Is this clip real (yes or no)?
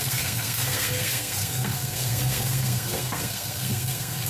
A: no